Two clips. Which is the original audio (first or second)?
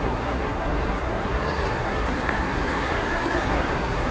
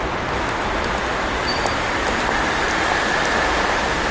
second